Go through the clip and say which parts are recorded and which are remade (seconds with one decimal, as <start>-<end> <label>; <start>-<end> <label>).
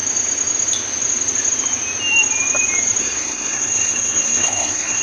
0.0-3.0 recorded; 3.0-5.0 remade